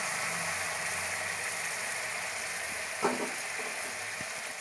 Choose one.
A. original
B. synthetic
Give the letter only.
A